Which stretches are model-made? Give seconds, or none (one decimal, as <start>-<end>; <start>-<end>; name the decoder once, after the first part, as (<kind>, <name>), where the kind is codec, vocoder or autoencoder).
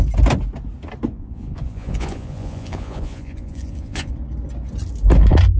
1.1-4.1 (vocoder, Vocos)